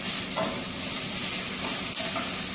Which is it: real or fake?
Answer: real